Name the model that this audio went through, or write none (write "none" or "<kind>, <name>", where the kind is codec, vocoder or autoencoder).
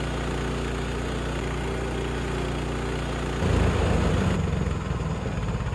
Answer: none